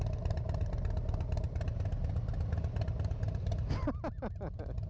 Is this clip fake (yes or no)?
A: no